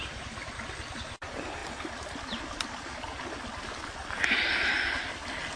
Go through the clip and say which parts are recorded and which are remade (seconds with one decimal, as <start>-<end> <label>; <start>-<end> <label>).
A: 0.0-5.6 recorded